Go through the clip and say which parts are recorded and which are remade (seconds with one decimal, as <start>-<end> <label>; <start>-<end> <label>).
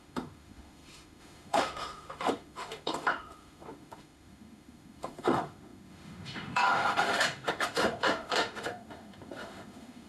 0.0-10.1 remade